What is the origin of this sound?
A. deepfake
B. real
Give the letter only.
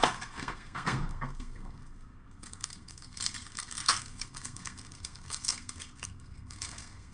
A